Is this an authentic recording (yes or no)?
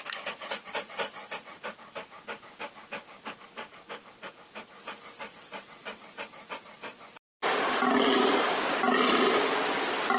yes